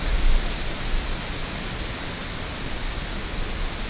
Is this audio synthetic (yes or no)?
no